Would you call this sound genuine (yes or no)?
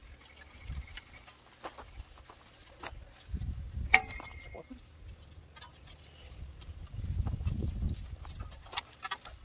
yes